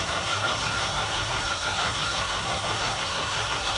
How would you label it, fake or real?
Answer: fake